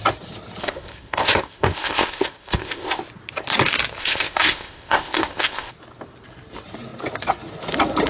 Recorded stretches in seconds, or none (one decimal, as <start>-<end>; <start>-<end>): 0.0-0.6; 3.0-4.0; 5.7-8.1